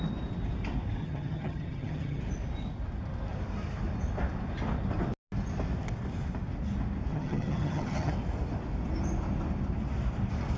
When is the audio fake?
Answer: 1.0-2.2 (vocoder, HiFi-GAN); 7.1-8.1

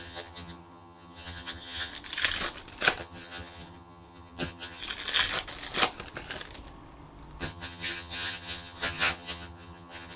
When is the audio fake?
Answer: 0.0-1.9 (vocoder, HiFi-GAN); 3.0-4.8; 7.4-10.2